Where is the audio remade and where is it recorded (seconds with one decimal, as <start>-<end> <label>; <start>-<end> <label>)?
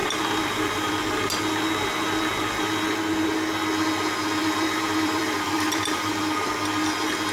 0.0-0.9 remade; 0.9-4.4 recorded; 4.4-6.1 remade; 6.1-7.3 recorded